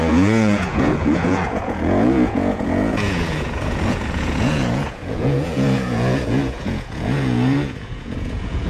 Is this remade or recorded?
remade